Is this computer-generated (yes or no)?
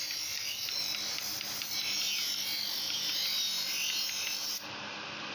no